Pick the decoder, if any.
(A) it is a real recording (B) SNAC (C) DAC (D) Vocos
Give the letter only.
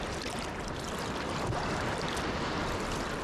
A